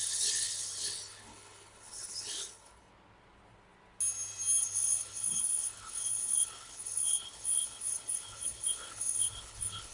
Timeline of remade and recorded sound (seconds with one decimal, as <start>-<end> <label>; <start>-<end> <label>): 0.0-2.9 remade; 2.9-4.6 recorded; 4.6-9.9 remade

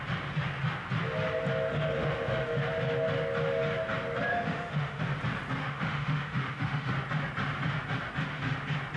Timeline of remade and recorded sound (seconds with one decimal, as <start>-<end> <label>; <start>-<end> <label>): 0.0-1.7 recorded; 1.7-2.6 remade; 2.6-4.3 recorded; 4.3-5.0 remade; 5.0-5.6 recorded; 5.6-6.9 remade; 6.9-9.0 recorded

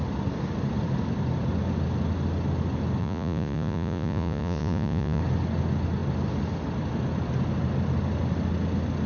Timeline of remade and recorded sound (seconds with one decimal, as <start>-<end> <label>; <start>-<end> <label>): 0.0-3.0 recorded; 3.0-5.2 remade; 5.2-9.1 recorded

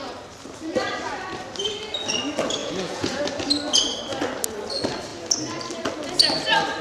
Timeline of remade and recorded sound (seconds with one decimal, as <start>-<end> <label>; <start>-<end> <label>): 0.0-2.6 recorded; 2.6-3.2 remade; 3.2-6.8 recorded

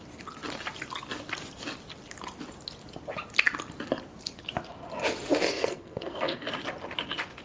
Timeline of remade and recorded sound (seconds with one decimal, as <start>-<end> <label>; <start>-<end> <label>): 0.0-5.5 recorded; 5.5-6.5 remade; 6.5-7.4 recorded

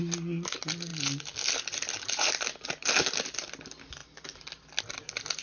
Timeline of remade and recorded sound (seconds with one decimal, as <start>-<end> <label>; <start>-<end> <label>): 0.0-5.4 recorded

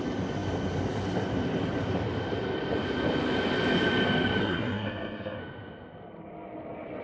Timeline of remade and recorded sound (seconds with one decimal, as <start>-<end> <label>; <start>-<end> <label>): 0.0-4.4 recorded; 4.4-5.4 remade; 5.4-7.0 recorded